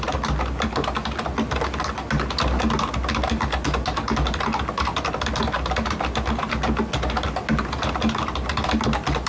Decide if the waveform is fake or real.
real